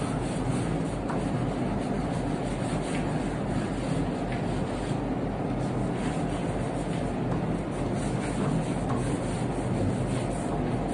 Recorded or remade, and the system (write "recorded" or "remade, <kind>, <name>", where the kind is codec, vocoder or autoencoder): recorded